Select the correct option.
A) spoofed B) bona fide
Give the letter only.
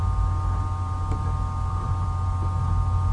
B